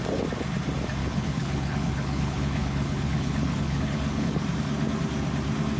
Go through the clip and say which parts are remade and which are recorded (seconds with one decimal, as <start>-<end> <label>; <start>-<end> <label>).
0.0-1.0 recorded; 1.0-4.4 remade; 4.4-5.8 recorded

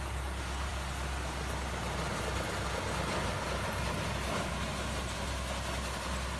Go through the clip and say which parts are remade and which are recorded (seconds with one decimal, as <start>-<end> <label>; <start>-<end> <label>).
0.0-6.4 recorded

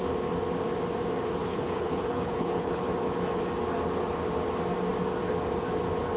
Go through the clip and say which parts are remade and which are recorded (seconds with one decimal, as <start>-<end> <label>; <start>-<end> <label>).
0.0-1.4 recorded; 1.4-2.8 remade; 2.8-6.2 recorded

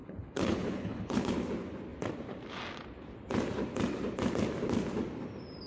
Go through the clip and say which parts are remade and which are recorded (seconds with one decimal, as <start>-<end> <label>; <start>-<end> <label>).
0.0-1.3 remade; 1.3-5.7 recorded

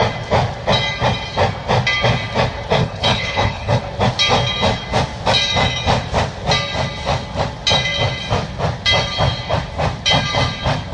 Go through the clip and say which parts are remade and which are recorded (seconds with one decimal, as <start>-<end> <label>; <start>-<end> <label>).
0.0-2.8 recorded; 2.8-3.8 remade; 3.8-10.9 recorded

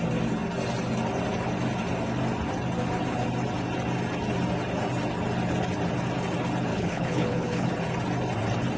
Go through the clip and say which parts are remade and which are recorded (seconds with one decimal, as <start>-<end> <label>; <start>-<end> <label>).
0.0-6.7 recorded; 6.7-7.7 remade; 7.7-8.8 recorded